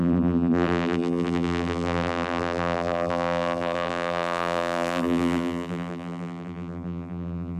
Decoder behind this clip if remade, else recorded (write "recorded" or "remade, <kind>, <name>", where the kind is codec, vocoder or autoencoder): remade, vocoder, BigVGAN v2